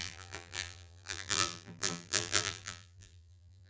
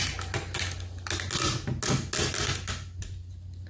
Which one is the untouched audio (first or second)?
second